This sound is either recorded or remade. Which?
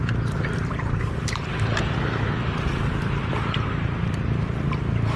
remade